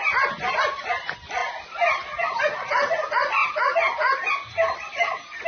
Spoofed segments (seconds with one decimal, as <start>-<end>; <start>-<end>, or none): none